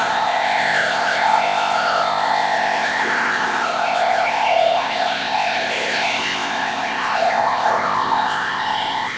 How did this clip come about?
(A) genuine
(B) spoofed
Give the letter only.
B